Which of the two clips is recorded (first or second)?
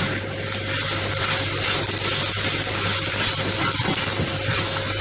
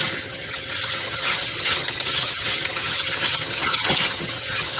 first